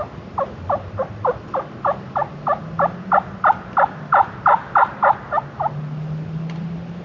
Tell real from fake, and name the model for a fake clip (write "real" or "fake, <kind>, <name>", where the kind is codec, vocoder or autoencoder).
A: real